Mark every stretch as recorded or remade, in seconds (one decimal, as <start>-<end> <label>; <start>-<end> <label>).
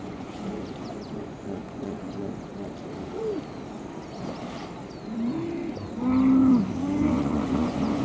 0.0-2.5 remade; 2.5-6.8 recorded; 6.8-8.0 remade